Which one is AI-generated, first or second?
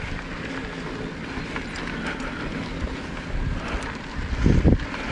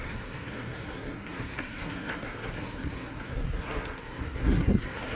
second